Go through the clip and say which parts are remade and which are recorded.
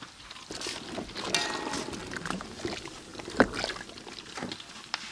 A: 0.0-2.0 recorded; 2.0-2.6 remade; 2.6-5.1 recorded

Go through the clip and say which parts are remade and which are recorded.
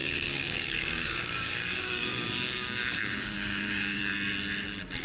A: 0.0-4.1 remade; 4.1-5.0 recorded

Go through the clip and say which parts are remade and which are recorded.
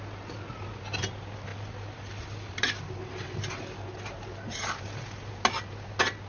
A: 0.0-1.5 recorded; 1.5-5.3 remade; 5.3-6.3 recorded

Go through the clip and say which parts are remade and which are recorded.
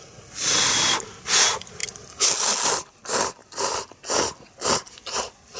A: 0.0-5.6 recorded